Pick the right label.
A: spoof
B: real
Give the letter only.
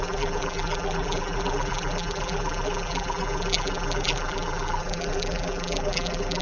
A